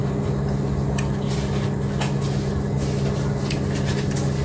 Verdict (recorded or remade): recorded